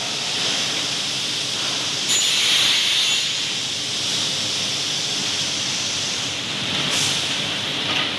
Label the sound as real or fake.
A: real